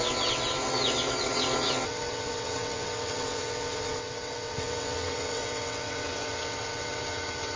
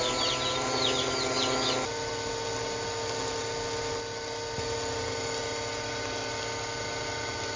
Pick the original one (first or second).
second